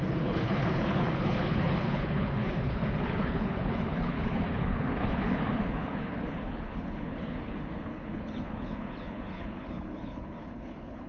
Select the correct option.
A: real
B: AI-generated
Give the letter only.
B